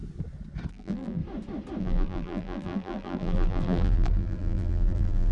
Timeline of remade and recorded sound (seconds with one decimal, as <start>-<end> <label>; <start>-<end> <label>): 0.0-0.7 recorded; 0.7-1.2 remade; 1.2-1.8 recorded; 1.8-5.3 remade